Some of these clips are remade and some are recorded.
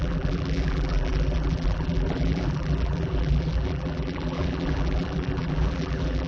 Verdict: remade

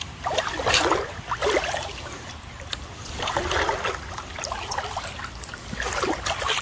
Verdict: recorded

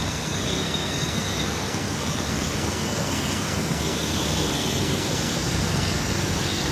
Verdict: remade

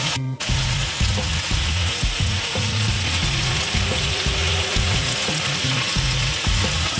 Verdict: remade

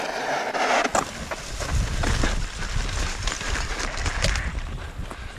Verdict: recorded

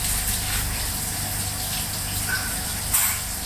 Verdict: recorded